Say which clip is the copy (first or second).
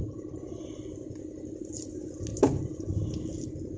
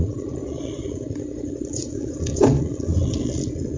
second